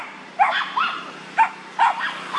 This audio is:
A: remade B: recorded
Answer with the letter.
A